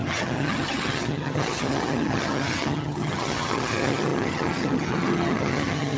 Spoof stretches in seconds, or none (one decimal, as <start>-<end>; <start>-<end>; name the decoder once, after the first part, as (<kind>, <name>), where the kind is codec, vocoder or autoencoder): 0.0-6.0 (vocoder, HiFi-GAN)